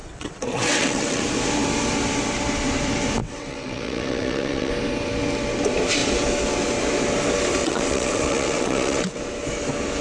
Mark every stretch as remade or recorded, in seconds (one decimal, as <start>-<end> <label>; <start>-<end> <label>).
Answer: 0.0-1.2 remade; 1.2-3.2 recorded; 3.2-4.7 remade; 4.7-7.6 recorded; 7.6-9.2 remade; 9.2-10.0 recorded

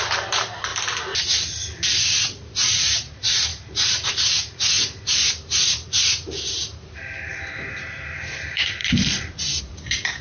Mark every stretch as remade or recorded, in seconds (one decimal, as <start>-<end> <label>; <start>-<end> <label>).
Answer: 0.0-0.7 remade; 0.7-2.0 recorded; 2.0-7.3 remade; 7.3-7.8 recorded; 7.8-8.8 remade; 8.8-9.6 recorded; 9.6-10.2 remade